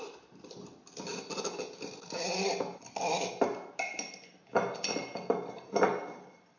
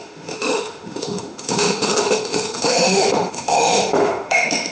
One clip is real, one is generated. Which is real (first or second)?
first